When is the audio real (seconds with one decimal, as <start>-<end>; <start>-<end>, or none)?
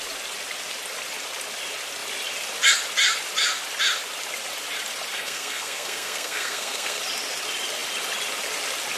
0.0-5.1; 7.0-9.0